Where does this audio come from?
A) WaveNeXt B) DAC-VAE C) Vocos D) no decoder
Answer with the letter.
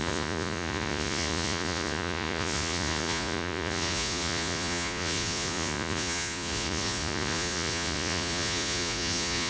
C